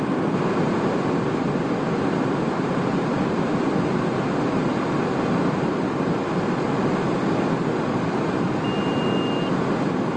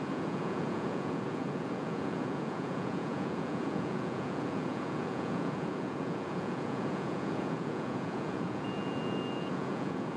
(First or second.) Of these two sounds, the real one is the first